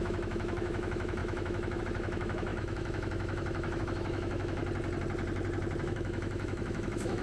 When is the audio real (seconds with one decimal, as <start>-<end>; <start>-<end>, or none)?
4.6-5.8